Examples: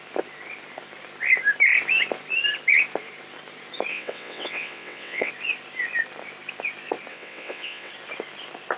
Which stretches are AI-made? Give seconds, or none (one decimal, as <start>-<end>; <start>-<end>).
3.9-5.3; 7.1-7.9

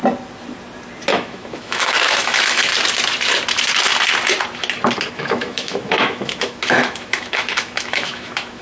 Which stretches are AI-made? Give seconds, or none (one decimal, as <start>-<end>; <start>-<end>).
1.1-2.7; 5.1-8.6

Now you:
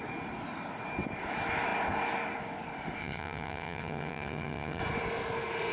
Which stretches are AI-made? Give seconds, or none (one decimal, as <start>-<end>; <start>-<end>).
3.0-4.8

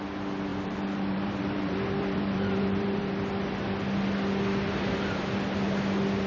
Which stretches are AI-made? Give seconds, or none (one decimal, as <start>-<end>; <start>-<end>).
0.5-3.1

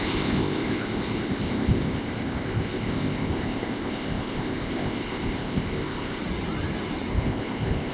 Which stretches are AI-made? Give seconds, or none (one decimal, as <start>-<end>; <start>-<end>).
0.0-6.2; 7.1-7.9